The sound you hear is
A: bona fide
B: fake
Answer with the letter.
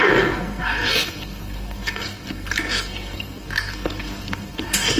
B